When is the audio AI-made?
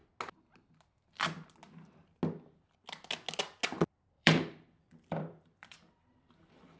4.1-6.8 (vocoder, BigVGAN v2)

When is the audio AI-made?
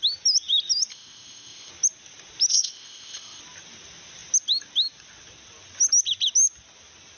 0.9-1.7 (codec, ZipCodec); 2.5-3.4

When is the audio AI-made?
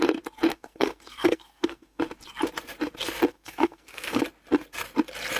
0.5-2.0 (codec, SNAC); 3.3-4.2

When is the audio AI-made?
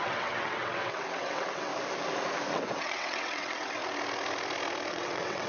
0.0-1.7 (vocoder, WaveNeXt); 2.5-3.8; 4.9-5.5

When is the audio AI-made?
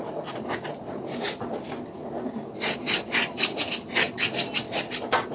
none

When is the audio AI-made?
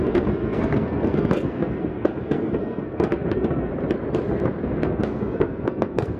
0.0-3.7 (codec, SNAC); 4.6-6.2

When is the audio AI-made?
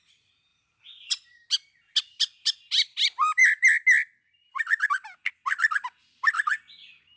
0.5-1.4 (vocoder, BigVGAN v2)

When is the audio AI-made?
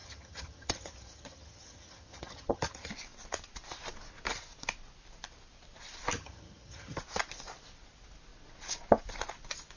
0.0-2.9 (vocoder, HiFi-GAN); 6.2-7.0